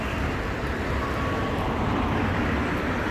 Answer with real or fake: real